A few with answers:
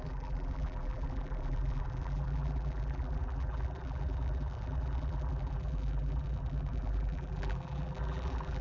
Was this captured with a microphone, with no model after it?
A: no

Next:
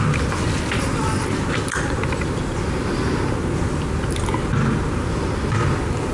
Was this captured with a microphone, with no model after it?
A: yes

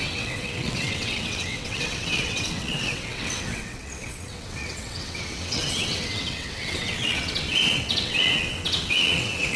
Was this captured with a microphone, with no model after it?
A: no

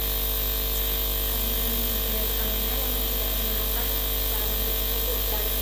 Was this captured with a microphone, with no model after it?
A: yes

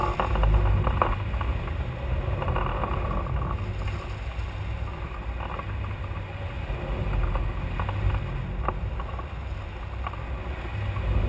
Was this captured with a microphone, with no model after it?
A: yes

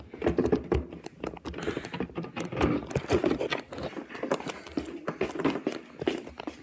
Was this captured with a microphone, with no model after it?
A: yes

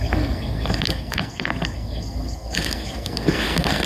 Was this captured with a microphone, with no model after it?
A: no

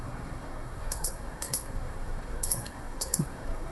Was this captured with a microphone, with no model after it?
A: no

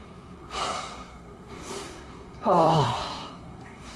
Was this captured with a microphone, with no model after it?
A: no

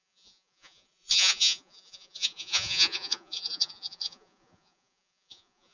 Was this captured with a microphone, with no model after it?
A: no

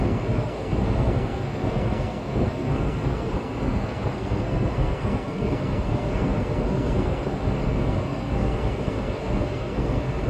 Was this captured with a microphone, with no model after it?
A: no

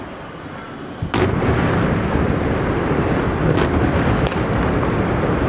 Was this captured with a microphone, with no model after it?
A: yes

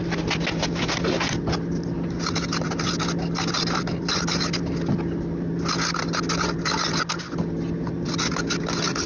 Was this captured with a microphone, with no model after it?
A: yes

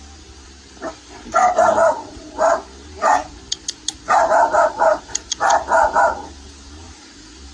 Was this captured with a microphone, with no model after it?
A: no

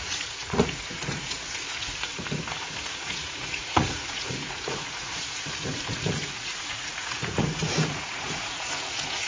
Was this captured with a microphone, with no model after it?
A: no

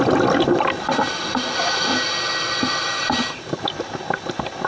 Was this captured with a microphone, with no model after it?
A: yes